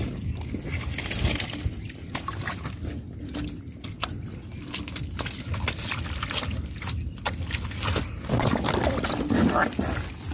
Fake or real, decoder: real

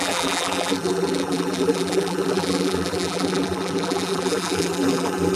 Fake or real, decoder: fake, vocoder, BigVGAN v2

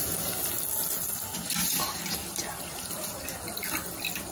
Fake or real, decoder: real